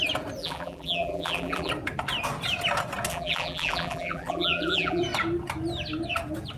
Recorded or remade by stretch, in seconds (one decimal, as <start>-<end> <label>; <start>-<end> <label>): 0.0-0.4 recorded; 0.4-1.7 remade; 1.7-3.1 recorded; 3.1-5.0 remade; 5.0-6.6 recorded